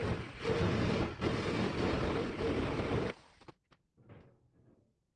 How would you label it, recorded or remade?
recorded